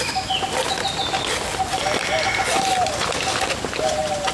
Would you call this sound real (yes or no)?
yes